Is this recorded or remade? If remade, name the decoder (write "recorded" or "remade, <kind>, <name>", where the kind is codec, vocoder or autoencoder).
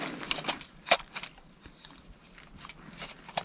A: recorded